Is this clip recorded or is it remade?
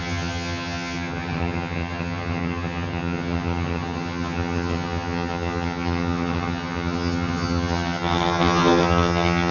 remade